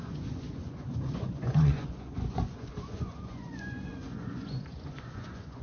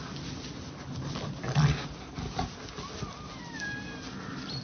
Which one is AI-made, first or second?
first